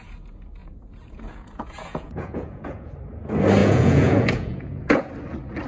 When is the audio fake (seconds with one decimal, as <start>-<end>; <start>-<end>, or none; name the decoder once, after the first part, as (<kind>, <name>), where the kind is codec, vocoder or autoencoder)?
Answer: 0.6-2.9 (vocoder, Vocos); 3.6-5.1